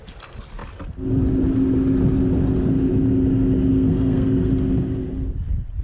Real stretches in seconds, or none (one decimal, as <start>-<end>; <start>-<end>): 0.0-3.7; 4.5-5.8